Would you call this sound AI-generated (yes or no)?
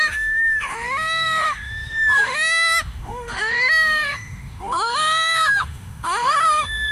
yes